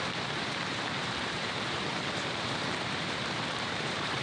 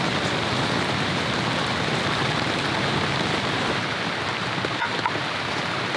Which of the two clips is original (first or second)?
second